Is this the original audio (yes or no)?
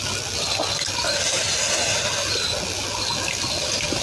yes